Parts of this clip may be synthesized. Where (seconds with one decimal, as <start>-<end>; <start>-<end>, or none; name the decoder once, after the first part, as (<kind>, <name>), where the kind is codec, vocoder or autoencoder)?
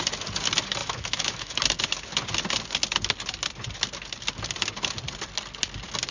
0.8-1.6 (autoencoder, DAC-VAE)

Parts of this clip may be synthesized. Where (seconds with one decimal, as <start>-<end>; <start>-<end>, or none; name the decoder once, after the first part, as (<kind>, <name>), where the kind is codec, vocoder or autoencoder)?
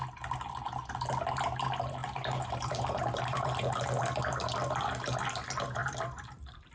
2.0-4.0 (vocoder, BigVGAN v2); 5.8-6.7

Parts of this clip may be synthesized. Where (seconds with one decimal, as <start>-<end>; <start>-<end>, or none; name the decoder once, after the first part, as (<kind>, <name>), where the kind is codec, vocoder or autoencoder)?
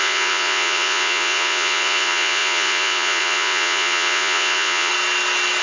0.0-4.9 (vocoder, Vocos)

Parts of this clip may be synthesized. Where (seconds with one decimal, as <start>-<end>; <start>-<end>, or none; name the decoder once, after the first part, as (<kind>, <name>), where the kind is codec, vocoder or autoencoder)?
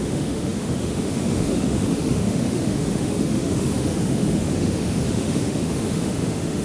0.0-6.6 (autoencoder, DAC-VAE)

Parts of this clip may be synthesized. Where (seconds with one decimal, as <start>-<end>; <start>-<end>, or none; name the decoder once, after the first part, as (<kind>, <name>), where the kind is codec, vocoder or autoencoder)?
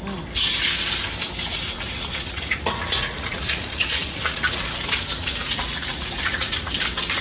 1.5-4.8 (vocoder, Vocos); 5.2-6.7